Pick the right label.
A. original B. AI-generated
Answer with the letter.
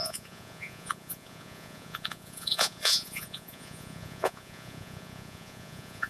B